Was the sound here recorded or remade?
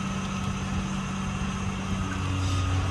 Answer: recorded